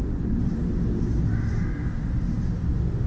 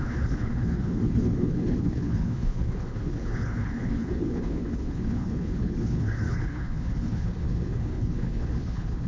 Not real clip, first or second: second